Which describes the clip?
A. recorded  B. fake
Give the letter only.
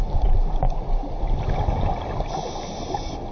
A